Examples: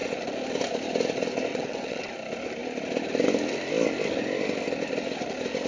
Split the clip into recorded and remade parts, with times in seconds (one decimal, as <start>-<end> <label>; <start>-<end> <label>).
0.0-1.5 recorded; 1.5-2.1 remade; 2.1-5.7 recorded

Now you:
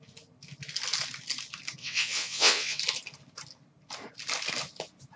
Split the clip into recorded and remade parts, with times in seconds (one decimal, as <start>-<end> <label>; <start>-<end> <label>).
0.0-1.8 recorded; 1.8-2.8 remade; 2.8-5.2 recorded

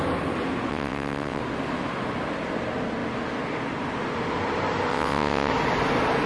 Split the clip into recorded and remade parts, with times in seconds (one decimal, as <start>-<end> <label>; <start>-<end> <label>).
0.0-0.7 recorded; 0.7-1.4 remade; 1.4-4.9 recorded; 4.9-5.5 remade; 5.5-6.3 recorded

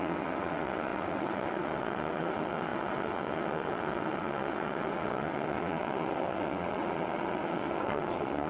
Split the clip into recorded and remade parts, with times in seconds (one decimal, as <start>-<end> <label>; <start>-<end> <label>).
0.0-8.5 remade

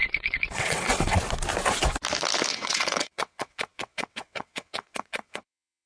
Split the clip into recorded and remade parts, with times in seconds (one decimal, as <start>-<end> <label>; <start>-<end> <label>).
0.0-1.2 remade; 1.2-2.5 recorded; 2.5-5.9 remade